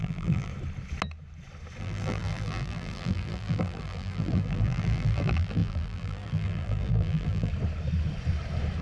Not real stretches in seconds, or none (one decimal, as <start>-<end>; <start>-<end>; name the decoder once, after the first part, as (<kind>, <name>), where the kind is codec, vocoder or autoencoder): 0.0-0.5 (vocoder, BigVGAN v2); 1.8-7.5